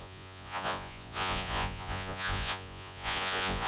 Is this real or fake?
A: fake